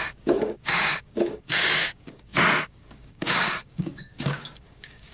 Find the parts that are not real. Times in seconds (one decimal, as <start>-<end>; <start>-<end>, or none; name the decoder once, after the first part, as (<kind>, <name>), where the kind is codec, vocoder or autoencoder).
0.0-5.1 (codec, DAC)

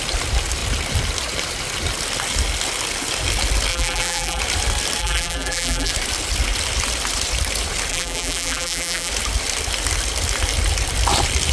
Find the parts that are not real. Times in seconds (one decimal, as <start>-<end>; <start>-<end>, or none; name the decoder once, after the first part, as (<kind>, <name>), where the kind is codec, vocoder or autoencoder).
3.7-4.4 (vocoder, BigVGAN v2); 5.0-5.9; 7.9-9.1

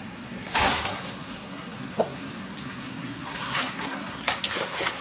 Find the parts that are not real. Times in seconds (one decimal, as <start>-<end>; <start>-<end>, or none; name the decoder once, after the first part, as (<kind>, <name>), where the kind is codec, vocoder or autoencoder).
0.0-5.0 (codec, SNAC)

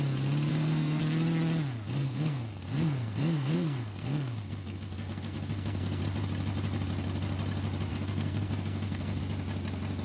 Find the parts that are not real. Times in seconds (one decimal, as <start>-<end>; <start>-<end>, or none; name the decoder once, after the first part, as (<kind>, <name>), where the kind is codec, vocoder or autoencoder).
0.5-1.0 (codec, SNAC); 2.0-6.0; 7.9-9.2

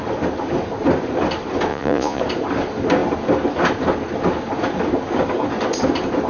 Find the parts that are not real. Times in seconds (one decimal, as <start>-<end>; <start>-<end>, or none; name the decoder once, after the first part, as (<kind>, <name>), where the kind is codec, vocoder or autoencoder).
1.7-2.2 (vocoder, Vocos)

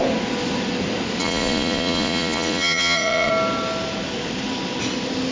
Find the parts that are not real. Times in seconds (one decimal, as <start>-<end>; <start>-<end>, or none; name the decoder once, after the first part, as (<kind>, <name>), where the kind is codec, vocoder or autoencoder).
1.2-3.3 (vocoder, Vocos)

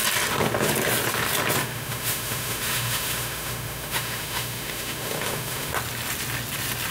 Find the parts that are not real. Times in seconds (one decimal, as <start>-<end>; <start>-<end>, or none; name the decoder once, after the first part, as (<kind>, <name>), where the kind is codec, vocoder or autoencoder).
1.6-5.7 (autoencoder, DAC-VAE)